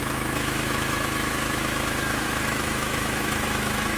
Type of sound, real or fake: fake